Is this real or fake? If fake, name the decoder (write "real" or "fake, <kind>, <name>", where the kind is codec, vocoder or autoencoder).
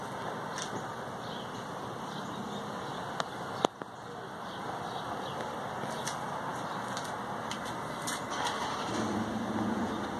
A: real